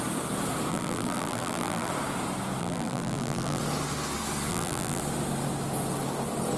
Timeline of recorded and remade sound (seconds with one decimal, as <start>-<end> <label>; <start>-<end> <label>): 0.0-0.7 recorded; 0.7-1.9 remade; 1.9-2.6 recorded; 2.6-3.6 remade; 3.6-4.5 recorded; 4.5-5.0 remade; 5.0-6.6 recorded